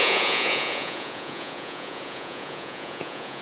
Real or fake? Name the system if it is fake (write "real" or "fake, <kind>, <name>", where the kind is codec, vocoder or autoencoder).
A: fake, vocoder, Vocos